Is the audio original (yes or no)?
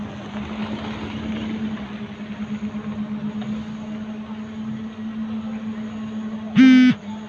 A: yes